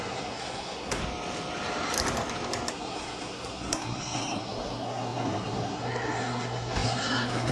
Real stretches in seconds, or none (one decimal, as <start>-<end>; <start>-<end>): 1.0-2.7